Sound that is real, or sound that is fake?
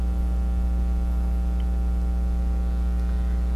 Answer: real